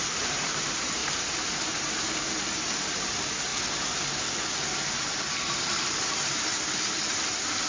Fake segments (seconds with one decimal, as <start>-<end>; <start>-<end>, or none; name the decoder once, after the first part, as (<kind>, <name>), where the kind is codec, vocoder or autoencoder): 0.0-3.5 (vocoder, BigVGAN v2); 5.0-7.7